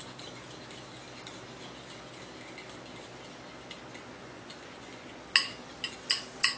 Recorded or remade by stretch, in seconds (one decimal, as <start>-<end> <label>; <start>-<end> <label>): 0.0-3.9 recorded; 3.9-5.2 remade; 5.2-6.6 recorded